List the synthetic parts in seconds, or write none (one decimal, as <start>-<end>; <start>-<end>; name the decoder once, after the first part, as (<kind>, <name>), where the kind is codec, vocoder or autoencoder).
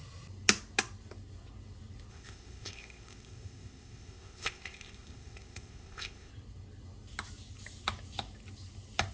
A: 2.1-6.3 (codec, ZipCodec)